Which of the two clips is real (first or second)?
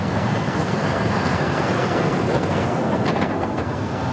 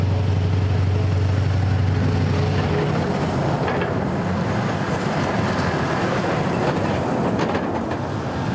second